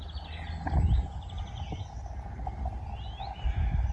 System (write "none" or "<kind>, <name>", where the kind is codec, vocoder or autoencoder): none